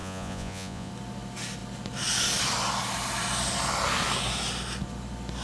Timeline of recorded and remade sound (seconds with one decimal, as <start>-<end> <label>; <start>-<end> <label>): 0.0-0.9 remade; 0.9-5.4 recorded

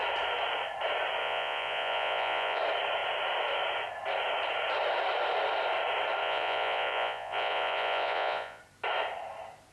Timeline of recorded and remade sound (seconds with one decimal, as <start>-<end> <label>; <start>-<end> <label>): 0.0-1.2 recorded; 1.2-2.6 remade; 2.6-6.2 recorded; 6.2-8.6 remade; 8.6-9.7 recorded

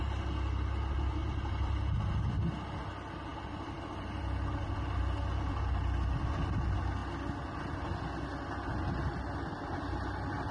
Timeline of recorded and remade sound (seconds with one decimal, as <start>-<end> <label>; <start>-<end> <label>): 0.0-10.5 recorded